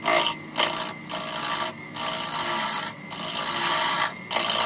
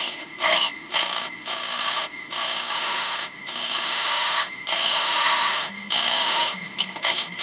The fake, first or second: second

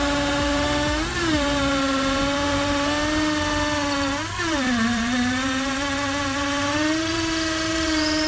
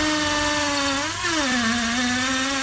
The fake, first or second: first